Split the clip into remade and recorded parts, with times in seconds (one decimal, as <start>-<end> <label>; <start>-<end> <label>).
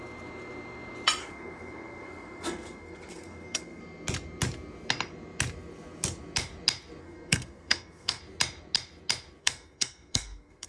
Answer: 0.0-1.2 recorded; 1.2-3.8 remade; 3.8-7.0 recorded; 7.0-8.2 remade; 8.2-9.4 recorded; 9.4-10.7 remade